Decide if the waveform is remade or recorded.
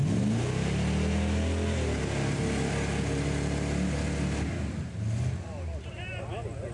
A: recorded